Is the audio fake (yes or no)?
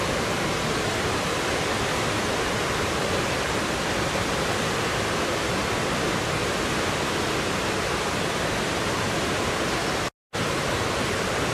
no